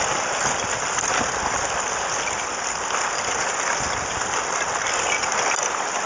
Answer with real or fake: real